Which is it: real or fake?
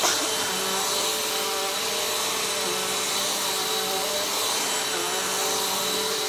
fake